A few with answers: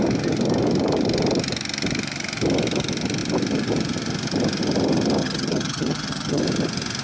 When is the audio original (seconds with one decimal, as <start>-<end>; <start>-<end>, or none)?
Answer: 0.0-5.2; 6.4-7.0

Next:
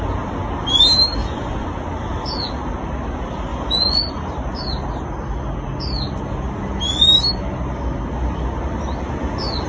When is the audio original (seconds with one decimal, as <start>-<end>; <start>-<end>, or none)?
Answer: 0.0-1.2; 1.7-3.5; 4.3-9.7

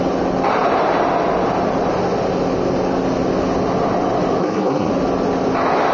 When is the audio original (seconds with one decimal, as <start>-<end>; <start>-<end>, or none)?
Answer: 0.0-4.4; 4.9-5.9

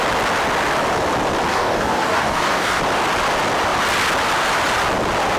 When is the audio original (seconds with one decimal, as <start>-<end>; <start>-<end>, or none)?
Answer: 0.0-1.5; 2.8-5.4

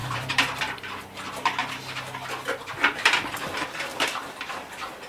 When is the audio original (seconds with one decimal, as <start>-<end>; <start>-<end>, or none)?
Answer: 0.6-5.1

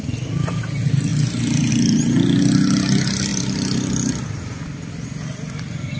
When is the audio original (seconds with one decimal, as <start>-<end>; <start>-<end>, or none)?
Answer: 0.0-3.3; 4.9-6.0

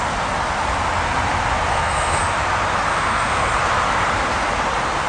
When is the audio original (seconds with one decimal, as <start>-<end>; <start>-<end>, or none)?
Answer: 0.0-1.7; 2.2-2.9; 3.5-5.1